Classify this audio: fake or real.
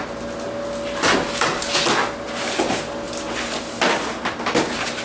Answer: real